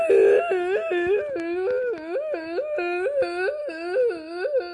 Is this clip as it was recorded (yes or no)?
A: yes